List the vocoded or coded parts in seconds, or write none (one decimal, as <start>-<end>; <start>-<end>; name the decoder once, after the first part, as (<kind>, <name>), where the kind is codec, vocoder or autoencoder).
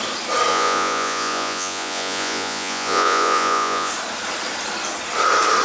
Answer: 0.5-3.9 (vocoder, Vocos)